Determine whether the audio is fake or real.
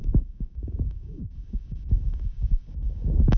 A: fake